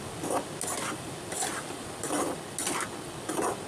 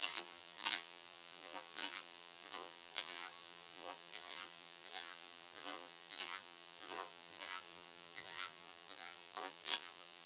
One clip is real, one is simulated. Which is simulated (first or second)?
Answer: second